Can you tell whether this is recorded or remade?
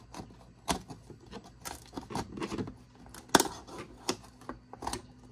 recorded